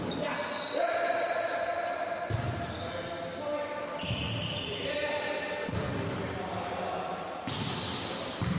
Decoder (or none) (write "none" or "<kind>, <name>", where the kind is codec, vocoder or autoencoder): none